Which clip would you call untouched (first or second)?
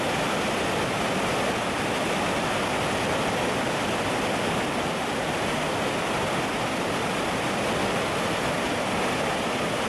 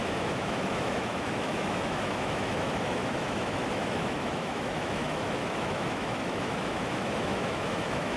first